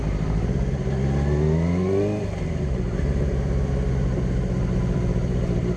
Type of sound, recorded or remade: recorded